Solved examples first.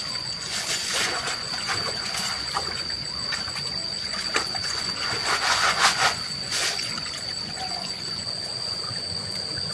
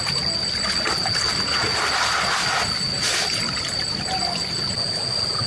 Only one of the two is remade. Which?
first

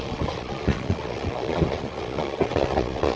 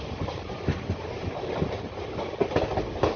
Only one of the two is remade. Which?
first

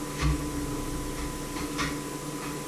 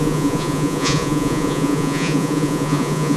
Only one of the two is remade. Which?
second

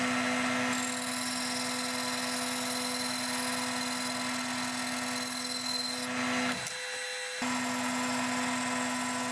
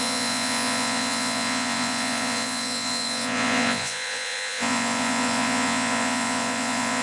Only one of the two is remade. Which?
second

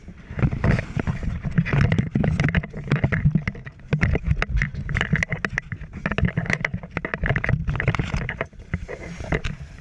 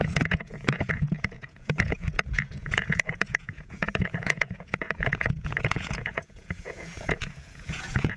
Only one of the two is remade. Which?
second